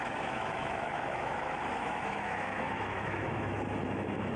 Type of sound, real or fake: fake